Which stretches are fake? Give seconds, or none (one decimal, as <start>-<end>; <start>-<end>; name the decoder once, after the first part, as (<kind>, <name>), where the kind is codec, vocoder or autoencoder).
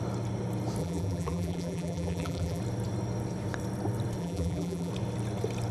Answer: 0.8-2.6 (vocoder, BigVGAN v2); 4.2-4.9